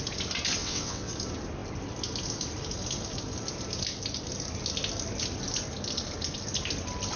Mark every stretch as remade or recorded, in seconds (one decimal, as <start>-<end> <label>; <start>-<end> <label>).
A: 0.0-0.6 recorded; 0.6-1.1 remade; 1.1-7.2 recorded

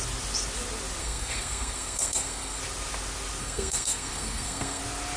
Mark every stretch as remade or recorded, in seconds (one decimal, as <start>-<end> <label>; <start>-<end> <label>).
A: 0.0-1.0 recorded; 1.0-2.6 remade; 2.6-3.4 recorded; 3.4-4.8 remade; 4.8-5.2 recorded